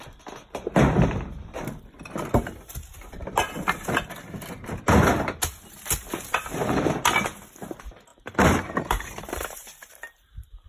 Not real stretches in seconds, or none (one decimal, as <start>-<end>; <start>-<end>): 8.1-10.7